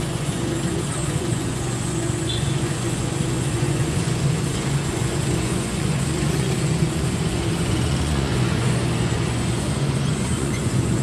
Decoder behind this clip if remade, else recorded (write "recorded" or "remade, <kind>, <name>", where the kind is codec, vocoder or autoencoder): remade, vocoder, Vocos